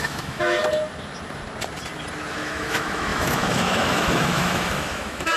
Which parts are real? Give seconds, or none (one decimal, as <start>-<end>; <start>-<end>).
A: 0.6-2.3